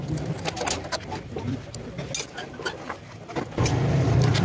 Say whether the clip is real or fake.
real